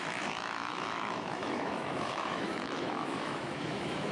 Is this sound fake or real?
fake